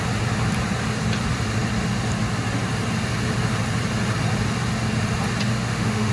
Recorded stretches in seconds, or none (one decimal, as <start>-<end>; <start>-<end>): 0.0-5.5